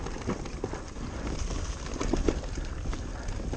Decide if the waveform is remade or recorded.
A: recorded